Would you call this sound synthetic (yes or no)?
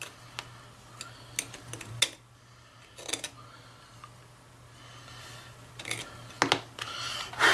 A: no